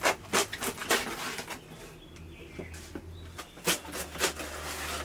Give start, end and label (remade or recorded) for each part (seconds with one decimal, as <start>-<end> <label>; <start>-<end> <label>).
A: 0.0-5.0 recorded